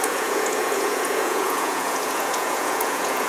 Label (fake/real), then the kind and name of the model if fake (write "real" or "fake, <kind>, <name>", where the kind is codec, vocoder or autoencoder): fake, vocoder, Vocos